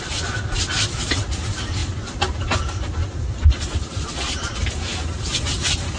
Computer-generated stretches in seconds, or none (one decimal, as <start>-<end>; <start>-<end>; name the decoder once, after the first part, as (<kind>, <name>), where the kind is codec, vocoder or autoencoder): 0.0-6.0 (vocoder, BigVGAN v2)